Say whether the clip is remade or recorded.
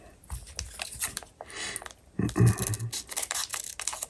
recorded